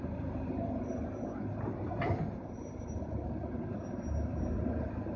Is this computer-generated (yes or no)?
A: no